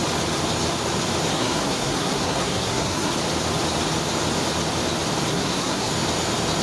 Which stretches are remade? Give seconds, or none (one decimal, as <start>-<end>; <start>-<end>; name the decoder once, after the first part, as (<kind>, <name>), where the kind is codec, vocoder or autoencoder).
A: 1.3-3.1 (codec, SNAC); 5.3-5.9